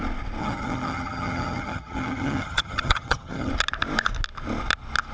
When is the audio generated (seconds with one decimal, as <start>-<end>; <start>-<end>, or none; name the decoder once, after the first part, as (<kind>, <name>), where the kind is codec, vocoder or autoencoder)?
0.4-3.5 (vocoder, HiFi-GAN)

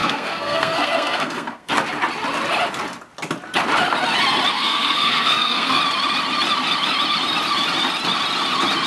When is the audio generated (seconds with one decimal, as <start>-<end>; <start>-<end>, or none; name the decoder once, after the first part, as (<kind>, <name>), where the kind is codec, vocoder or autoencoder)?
0.0-1.7 (codec, SNAC); 4.5-5.8

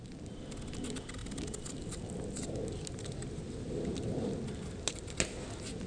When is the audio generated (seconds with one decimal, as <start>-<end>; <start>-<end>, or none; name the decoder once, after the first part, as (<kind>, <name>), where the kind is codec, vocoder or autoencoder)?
none

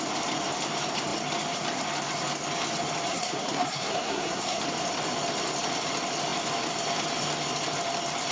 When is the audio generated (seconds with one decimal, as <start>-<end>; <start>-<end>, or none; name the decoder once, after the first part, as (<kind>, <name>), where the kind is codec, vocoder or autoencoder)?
3.1-4.6 (codec, SNAC)

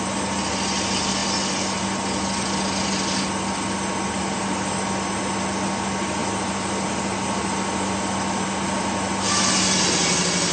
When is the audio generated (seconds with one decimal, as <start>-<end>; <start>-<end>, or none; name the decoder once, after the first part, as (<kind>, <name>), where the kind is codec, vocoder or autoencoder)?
none

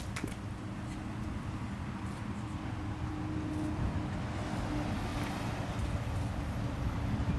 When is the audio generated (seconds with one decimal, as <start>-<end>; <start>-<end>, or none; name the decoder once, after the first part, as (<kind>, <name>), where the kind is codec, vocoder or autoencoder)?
none